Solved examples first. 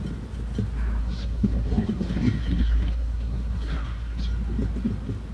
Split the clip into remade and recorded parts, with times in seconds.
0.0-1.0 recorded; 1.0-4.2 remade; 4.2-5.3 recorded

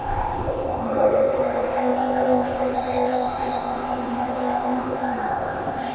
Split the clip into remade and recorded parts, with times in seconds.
0.0-5.9 remade

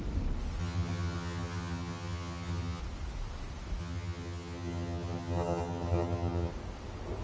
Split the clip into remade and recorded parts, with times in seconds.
0.0-0.6 recorded; 0.6-2.8 remade; 2.8-3.8 recorded; 3.8-6.5 remade; 6.5-7.2 recorded

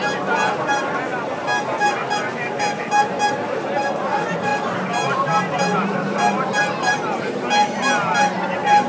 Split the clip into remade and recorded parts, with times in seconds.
0.0-8.9 recorded

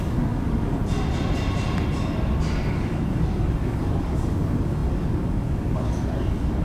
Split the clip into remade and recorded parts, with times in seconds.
0.0-0.8 remade; 0.8-2.7 recorded; 2.7-6.6 remade

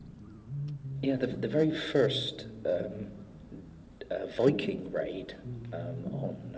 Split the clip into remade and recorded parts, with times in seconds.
0.0-1.9 remade; 1.9-3.8 recorded; 3.8-5.6 remade; 5.6-6.6 recorded

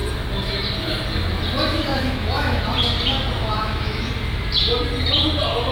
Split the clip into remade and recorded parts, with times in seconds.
0.0-1.9 recorded; 1.9-2.6 remade; 2.6-3.4 recorded; 3.4-4.1 remade; 4.1-5.7 recorded

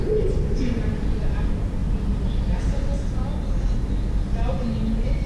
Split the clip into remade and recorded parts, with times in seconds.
0.0-5.3 recorded